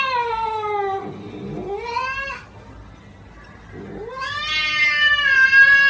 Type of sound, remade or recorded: recorded